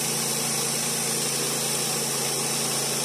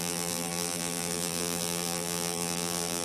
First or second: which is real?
first